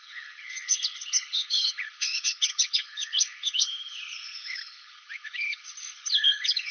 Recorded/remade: remade